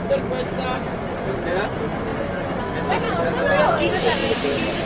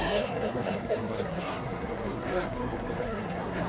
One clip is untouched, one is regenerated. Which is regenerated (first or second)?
second